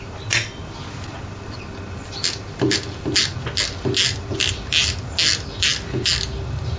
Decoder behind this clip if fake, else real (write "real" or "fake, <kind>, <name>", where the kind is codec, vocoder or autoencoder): real